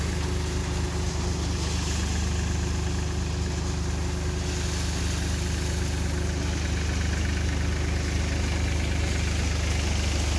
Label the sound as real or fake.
real